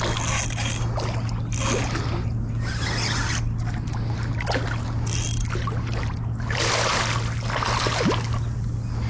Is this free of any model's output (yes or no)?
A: yes